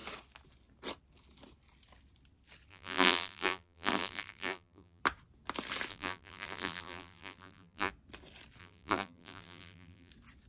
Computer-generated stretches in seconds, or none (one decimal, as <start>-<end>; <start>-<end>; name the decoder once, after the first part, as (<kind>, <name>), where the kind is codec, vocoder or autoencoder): 2.7-5.0 (vocoder, BigVGAN v2); 5.9-7.9; 8.6-10.1